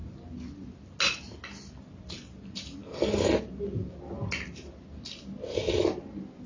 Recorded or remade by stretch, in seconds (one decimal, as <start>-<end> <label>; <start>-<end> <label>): 0.0-6.5 recorded